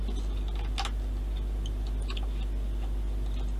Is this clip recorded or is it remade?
recorded